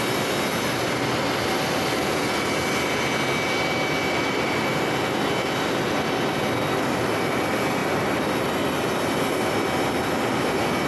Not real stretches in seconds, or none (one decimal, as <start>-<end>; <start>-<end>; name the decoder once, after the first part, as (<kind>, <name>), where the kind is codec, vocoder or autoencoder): none